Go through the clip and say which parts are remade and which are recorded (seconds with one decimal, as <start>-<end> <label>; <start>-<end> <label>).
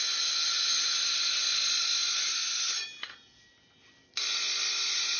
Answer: 0.0-5.2 recorded